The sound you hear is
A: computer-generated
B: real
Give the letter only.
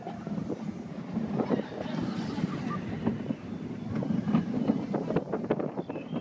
B